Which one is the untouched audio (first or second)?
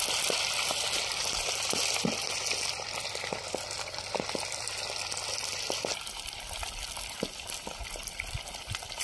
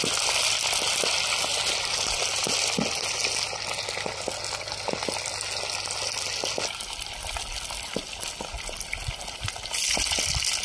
second